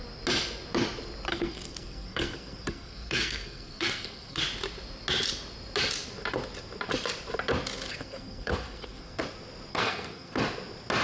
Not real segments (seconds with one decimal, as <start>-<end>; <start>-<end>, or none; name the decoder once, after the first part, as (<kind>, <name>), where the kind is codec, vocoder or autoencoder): 1.3-4.4 (codec, SNAC); 7.9-9.2; 9.7-10.4